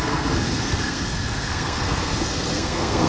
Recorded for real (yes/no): no